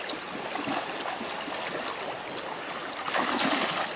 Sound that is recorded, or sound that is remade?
recorded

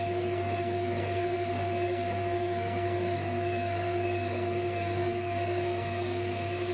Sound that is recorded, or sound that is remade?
remade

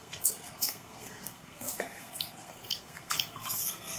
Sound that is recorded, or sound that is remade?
remade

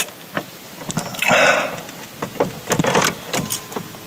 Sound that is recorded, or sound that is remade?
recorded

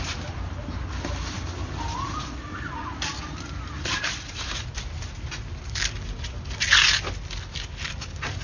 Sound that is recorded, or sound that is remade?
recorded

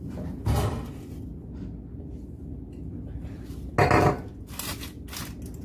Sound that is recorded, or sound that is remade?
recorded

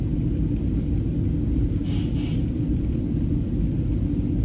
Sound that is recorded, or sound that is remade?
recorded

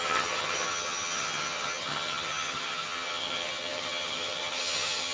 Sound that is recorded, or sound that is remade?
remade